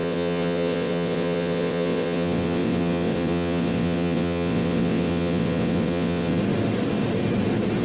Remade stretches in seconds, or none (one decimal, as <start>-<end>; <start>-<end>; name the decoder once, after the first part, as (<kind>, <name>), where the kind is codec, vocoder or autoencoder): 0.0-6.4 (vocoder, WaveNeXt)